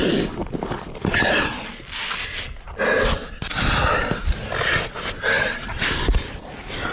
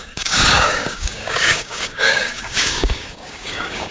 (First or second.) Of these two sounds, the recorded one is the first